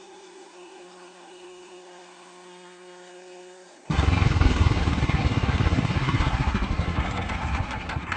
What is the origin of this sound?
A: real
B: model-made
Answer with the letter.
B